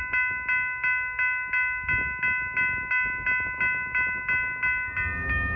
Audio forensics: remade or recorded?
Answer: recorded